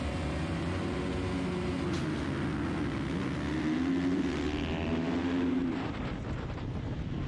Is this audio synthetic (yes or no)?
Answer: no